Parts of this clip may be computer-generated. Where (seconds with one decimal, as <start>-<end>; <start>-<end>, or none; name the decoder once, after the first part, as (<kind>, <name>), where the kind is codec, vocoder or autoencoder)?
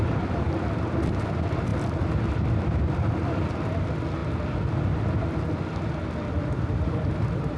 0.0-4.2 (vocoder, BigVGAN v2); 6.3-7.6